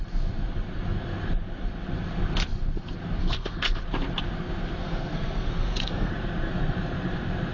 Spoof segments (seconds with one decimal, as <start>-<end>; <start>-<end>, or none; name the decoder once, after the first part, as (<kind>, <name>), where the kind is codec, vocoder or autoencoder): 3.2-3.8 (codec, SNAC); 4.8-6.1